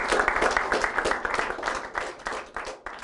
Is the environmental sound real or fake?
real